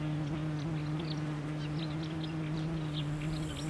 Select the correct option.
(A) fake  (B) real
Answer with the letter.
B